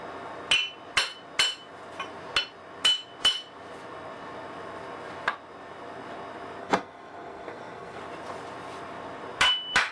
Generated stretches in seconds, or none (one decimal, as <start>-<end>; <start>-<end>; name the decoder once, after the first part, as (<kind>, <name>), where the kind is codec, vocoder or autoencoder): 6.6-8.0 (codec, SNAC)